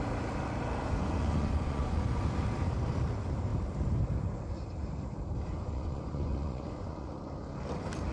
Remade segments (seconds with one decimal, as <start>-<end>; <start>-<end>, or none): 0.8-2.1; 5.5-7.1